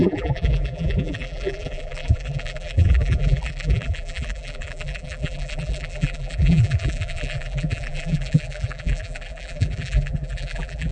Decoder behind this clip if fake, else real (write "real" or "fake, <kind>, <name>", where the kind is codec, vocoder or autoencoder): fake, vocoder, BigVGAN v2